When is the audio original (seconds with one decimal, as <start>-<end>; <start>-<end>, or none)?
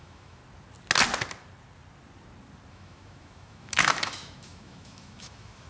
0.4-2.7